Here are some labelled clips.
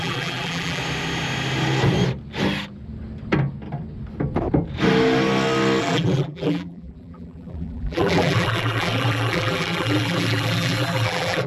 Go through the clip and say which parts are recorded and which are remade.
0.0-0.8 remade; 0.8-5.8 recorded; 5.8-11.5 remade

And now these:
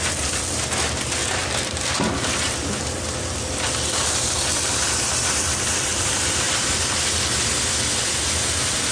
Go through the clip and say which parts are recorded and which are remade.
0.0-5.9 recorded; 5.9-6.7 remade; 6.7-8.9 recorded